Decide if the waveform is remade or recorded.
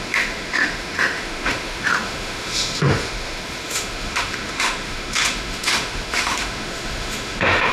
remade